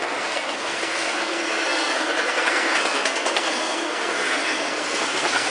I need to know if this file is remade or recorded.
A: remade